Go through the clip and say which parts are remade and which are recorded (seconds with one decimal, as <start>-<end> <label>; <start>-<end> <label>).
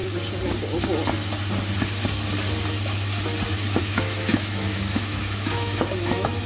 0.0-3.8 recorded; 3.8-6.5 remade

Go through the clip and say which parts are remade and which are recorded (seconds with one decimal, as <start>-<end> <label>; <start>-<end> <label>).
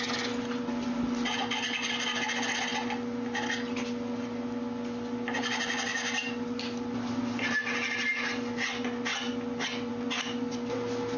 0.0-11.2 recorded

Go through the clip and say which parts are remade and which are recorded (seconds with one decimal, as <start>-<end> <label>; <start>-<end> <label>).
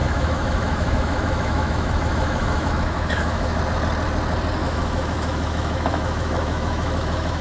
0.0-3.6 remade; 3.6-4.6 recorded; 4.6-7.4 remade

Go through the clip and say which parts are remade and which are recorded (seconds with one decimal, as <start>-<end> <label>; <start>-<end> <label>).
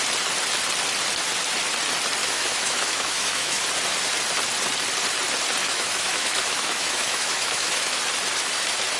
0.0-2.2 recorded; 2.2-3.6 remade; 3.6-5.6 recorded; 5.6-8.0 remade; 8.0-9.0 recorded